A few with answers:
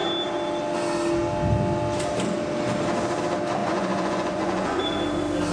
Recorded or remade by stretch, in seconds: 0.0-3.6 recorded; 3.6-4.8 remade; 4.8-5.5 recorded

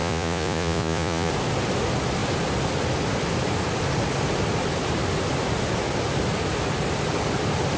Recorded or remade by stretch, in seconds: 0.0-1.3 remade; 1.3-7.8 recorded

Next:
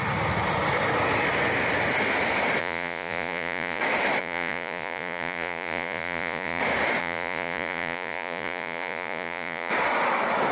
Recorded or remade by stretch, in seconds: 0.0-2.6 recorded; 2.6-3.8 remade; 3.8-4.2 recorded; 4.2-6.6 remade; 6.6-7.0 recorded; 7.0-9.7 remade; 9.7-10.5 recorded

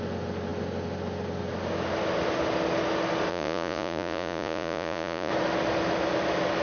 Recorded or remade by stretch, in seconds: 0.0-3.3 recorded; 3.3-5.3 remade; 5.3-6.6 recorded

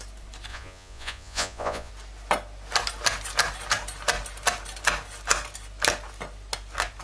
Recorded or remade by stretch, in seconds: 0.0-0.5 recorded; 0.5-1.9 remade; 1.9-7.0 recorded

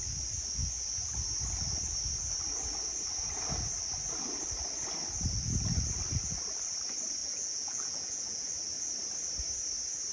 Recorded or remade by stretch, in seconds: 0.0-7.2 recorded; 7.2-8.5 remade; 8.5-10.1 recorded